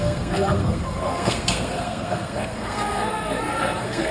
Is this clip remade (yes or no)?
yes